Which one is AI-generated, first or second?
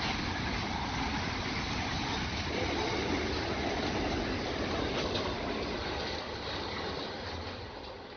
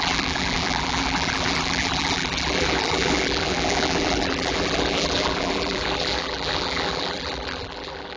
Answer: second